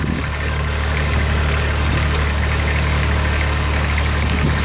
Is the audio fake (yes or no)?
yes